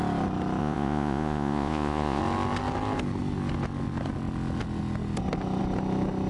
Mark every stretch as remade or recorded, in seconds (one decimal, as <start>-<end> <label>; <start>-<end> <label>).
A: 0.0-0.6 recorded; 0.6-2.2 remade; 2.2-6.3 recorded